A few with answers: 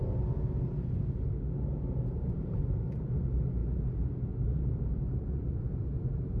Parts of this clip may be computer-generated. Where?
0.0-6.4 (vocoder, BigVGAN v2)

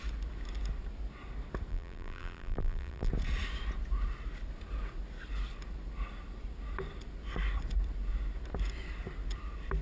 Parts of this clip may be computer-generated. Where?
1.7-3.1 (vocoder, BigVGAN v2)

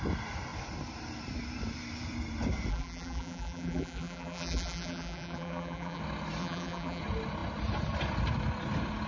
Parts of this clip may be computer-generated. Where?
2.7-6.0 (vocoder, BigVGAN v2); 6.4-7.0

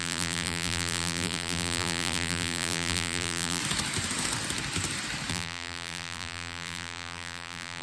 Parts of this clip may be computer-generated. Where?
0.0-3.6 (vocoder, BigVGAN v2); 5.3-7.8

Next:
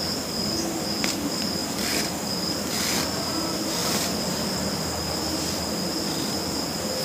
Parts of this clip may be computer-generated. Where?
1.6-2.7 (vocoder, BigVGAN v2); 3.8-6.3